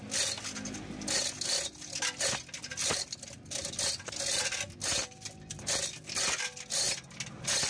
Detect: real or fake real